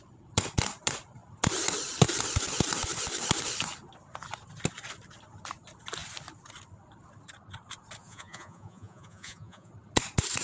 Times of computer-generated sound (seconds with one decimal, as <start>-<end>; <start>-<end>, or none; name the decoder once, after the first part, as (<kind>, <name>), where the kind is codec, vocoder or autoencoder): 8.0-9.7 (vocoder, Vocos)